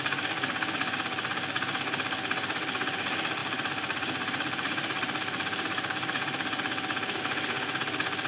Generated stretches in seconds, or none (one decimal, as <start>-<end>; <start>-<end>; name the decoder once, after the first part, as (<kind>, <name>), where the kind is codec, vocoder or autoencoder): 3.4-7.2 (vocoder, BigVGAN v2)